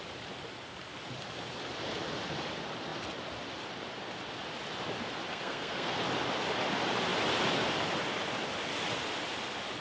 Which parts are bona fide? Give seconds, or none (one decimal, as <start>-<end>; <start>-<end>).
0.0-5.3; 6.0-9.8